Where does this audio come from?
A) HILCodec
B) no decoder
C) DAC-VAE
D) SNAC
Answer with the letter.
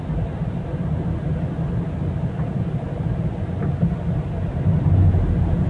B